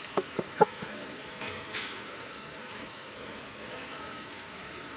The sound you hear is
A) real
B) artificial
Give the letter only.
B